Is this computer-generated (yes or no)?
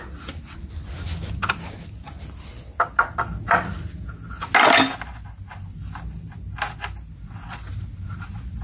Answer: no